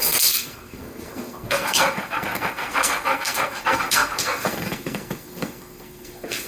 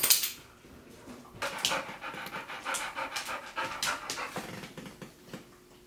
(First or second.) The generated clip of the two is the first